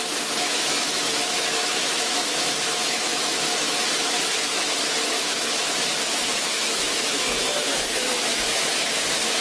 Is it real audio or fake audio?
fake